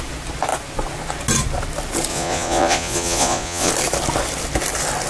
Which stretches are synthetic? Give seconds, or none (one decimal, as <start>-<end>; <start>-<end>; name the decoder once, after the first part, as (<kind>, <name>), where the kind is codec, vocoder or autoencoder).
2.1-3.7 (vocoder, Vocos)